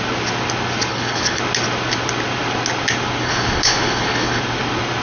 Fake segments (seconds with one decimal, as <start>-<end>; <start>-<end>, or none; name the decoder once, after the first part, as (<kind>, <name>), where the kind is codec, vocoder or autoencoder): 0.9-1.4 (codec, HILCodec); 3.2-4.4